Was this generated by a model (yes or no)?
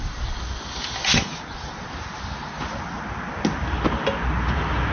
no